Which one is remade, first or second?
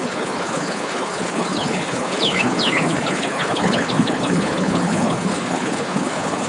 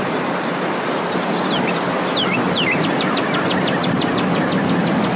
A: first